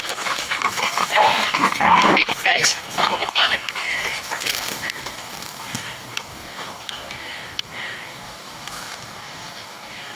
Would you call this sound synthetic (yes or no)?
yes